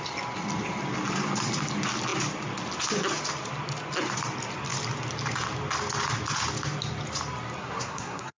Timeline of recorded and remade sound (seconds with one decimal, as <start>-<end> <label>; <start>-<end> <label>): 0.0-7.6 recorded; 7.6-8.4 remade